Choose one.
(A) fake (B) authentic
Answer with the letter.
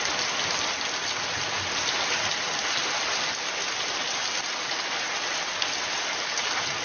B